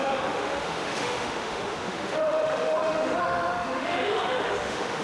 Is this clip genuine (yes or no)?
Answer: no